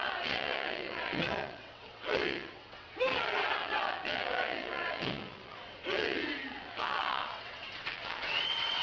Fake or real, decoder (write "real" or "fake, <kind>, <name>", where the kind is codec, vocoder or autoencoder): fake, vocoder, WaveNeXt